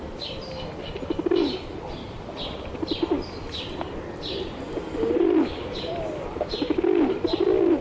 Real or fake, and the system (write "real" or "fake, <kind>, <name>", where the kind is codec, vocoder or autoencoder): real